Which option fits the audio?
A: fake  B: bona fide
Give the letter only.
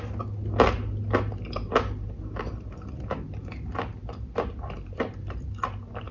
B